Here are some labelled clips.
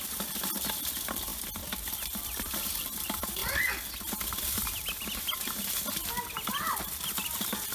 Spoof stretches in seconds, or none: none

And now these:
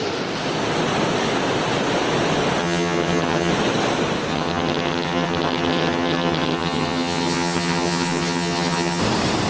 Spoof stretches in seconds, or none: 2.6-3.5 (vocoder, HiFi-GAN); 4.3-9.0